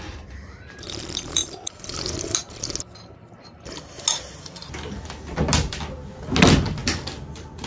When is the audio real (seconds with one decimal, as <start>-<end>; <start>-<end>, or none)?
0.0-7.7